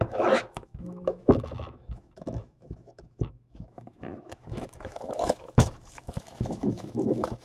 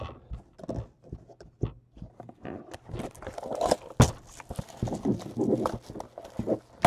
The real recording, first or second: second